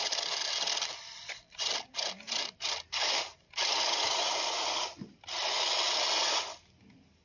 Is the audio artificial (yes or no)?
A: no